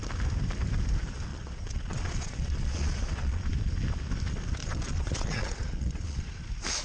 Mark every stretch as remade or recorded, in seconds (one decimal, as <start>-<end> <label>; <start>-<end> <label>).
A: 0.0-1.3 recorded; 1.3-3.5 remade; 3.5-4.6 recorded; 4.6-6.3 remade; 6.3-6.8 recorded